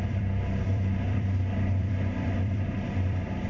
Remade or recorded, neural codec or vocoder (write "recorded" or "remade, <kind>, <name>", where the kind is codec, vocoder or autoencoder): remade, vocoder, BigVGAN v2